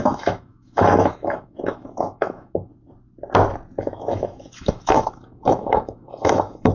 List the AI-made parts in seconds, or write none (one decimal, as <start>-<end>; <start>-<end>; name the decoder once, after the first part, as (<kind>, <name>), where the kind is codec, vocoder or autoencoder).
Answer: 0.0-2.7 (autoencoder, DAC-VAE); 3.8-6.7